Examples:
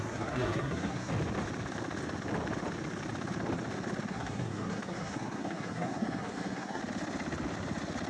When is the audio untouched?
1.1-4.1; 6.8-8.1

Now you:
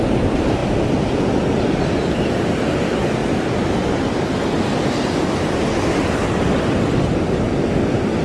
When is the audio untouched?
0.0-8.2